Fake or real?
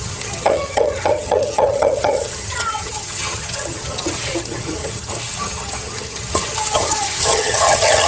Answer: fake